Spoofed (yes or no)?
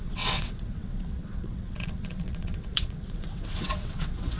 yes